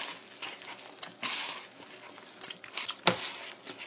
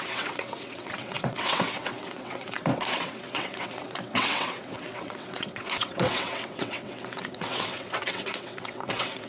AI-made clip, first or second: second